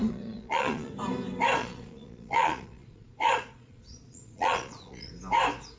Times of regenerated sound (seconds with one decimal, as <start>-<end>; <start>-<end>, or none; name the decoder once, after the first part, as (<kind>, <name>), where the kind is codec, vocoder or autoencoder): 0.0-0.9 (vocoder, Vocos); 1.6-5.1